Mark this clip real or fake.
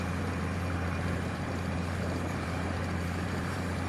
fake